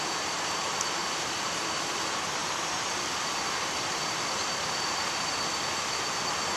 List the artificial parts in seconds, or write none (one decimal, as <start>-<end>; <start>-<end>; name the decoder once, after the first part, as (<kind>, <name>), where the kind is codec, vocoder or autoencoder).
none